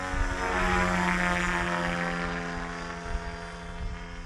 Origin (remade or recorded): recorded